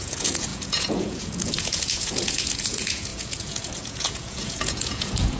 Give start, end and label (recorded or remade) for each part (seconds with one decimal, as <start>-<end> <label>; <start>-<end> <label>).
0.0-5.4 remade